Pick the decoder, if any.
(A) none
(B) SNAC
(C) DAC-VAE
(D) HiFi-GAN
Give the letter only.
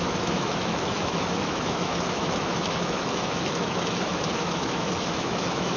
C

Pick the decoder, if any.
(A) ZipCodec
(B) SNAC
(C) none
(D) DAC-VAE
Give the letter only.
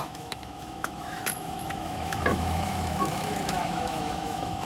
D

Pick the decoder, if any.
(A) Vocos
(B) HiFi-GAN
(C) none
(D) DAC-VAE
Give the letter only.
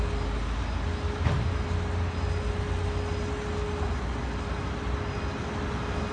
C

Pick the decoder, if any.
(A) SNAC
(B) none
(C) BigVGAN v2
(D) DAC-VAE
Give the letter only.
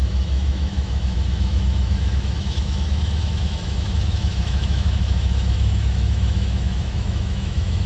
D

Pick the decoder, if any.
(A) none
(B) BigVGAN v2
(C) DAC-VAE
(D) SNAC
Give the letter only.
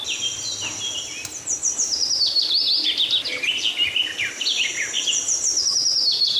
A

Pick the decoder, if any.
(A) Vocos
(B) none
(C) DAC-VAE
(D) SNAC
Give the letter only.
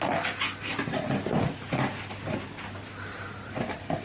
B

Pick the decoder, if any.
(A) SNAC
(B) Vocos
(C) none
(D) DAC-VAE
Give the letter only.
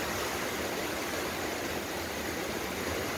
C